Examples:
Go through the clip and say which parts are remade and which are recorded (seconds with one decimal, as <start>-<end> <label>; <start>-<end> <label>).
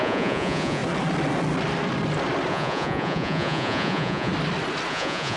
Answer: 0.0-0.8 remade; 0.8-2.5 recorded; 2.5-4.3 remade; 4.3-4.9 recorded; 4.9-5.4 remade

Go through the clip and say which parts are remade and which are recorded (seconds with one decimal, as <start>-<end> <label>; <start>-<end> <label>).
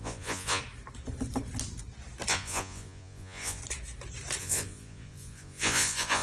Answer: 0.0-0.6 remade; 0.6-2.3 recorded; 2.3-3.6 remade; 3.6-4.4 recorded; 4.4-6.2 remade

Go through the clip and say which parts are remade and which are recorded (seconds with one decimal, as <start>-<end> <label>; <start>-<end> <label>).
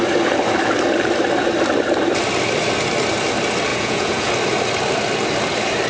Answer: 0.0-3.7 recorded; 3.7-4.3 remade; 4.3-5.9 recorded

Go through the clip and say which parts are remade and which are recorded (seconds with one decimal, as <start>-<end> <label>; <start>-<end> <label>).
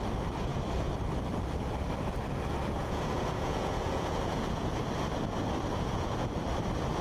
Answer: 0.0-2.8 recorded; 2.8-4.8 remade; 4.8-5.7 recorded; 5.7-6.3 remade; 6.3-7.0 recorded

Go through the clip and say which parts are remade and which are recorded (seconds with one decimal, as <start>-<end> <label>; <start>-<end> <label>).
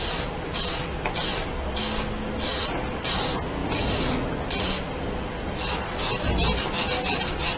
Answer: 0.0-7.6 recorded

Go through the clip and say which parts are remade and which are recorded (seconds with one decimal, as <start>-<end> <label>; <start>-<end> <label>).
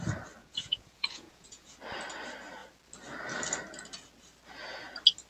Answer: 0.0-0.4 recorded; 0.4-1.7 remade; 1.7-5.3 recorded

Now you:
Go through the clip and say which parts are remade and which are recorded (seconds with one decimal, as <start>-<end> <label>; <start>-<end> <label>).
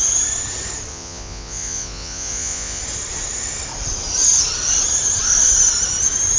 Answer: 0.0-0.9 recorded; 0.9-2.8 remade; 2.8-6.4 recorded